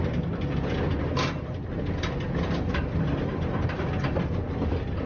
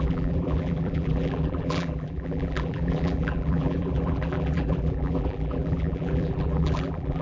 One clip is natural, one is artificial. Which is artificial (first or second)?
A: second